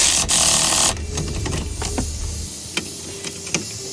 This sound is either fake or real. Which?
real